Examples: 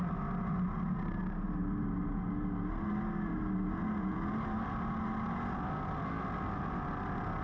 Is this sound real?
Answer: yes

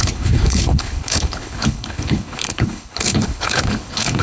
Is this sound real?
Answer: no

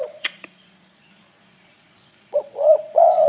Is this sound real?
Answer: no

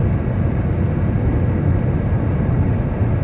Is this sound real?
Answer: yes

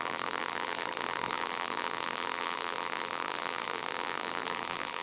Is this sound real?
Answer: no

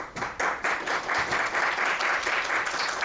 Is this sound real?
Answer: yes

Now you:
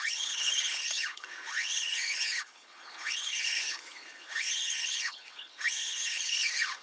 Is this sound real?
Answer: no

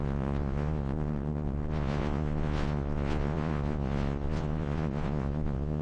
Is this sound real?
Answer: no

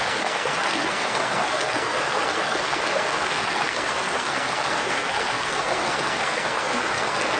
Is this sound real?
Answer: no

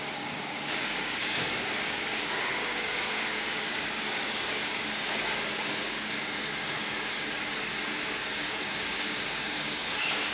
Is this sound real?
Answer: no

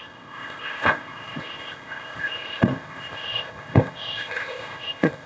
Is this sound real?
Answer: no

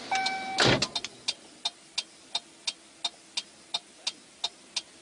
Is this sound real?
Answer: yes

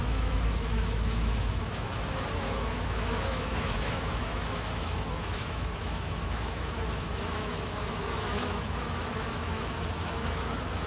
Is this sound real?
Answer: no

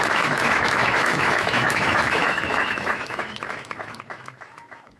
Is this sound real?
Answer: no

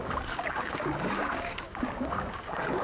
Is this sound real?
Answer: no